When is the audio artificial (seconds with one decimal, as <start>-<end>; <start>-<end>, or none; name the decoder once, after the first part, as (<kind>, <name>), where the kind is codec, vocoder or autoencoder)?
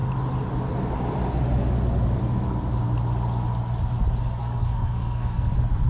4.4-5.5 (codec, SNAC)